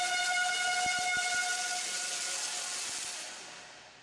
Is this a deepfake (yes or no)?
no